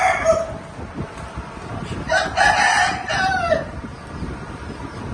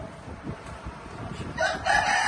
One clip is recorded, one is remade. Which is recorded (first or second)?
first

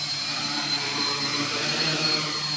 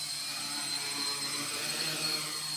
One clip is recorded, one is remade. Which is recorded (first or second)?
second